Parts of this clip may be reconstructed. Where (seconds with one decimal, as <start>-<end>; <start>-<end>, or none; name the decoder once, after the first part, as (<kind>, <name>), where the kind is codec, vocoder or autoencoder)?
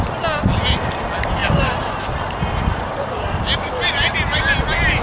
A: 1.4-4.4 (vocoder, BigVGAN v2)